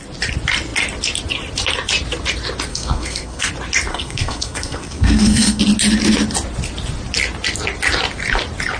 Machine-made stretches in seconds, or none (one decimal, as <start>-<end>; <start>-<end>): 2.7-3.5; 3.9-5.6